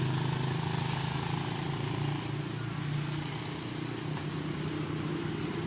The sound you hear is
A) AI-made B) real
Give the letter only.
B